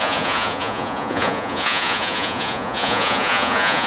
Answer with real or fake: fake